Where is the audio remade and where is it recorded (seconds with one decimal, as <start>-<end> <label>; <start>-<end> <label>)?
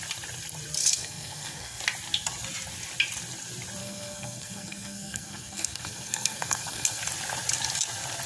0.0-0.8 recorded; 0.8-1.8 remade; 1.8-3.8 recorded; 3.8-7.0 remade; 7.0-8.3 recorded